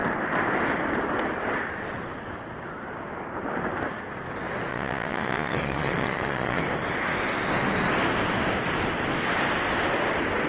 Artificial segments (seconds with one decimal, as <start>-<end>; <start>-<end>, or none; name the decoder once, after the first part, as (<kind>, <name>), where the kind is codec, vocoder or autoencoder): 4.7-6.6 (vocoder, Vocos)